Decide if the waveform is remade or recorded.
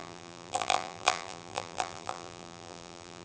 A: remade